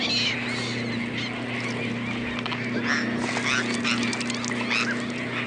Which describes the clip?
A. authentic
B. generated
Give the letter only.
A